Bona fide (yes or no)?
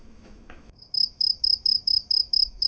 no